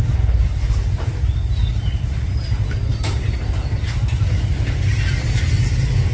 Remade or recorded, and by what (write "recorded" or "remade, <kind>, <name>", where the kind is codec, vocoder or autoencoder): recorded